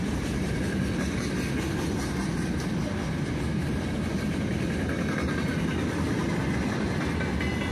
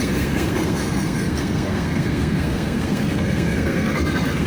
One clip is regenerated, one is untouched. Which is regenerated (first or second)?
second